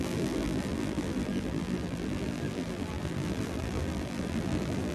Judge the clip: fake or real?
fake